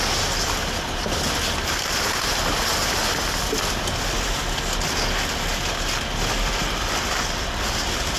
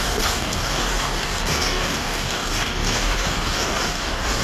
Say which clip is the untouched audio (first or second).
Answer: first